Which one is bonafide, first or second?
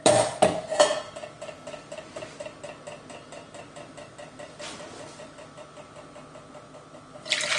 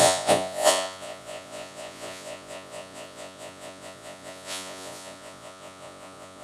first